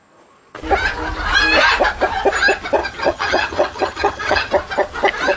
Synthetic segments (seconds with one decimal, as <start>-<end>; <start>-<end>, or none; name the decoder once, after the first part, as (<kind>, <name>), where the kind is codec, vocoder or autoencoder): 2.8-4.5 (vocoder, HiFi-GAN)